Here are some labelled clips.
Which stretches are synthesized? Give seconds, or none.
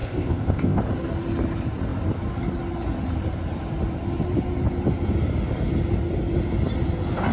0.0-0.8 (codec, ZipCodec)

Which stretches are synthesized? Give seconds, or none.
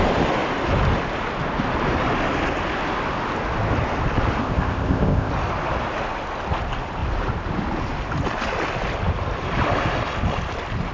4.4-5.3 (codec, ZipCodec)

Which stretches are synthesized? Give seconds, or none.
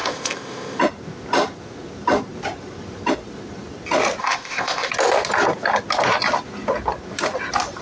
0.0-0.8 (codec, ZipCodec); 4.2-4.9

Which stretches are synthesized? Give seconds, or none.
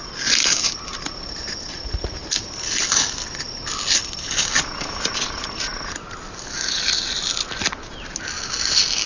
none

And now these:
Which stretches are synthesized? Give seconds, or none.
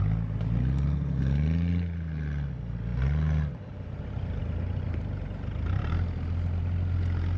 none